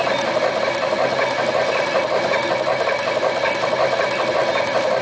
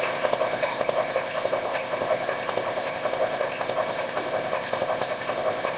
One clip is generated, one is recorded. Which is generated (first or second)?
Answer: second